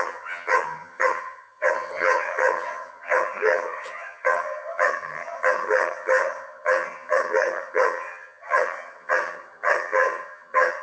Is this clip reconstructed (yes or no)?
yes